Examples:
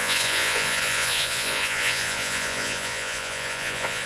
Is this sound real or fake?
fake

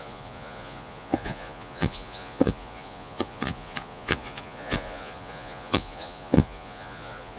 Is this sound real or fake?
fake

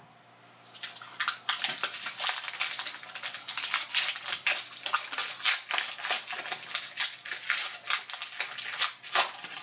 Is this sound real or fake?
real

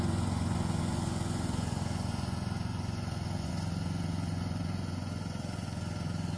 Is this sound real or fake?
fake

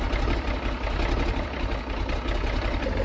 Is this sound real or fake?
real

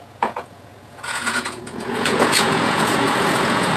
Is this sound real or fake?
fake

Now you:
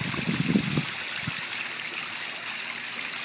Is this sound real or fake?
real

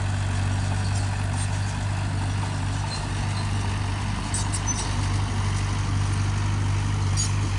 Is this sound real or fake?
real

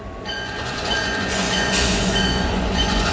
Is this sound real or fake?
fake